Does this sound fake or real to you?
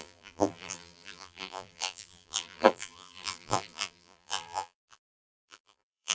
fake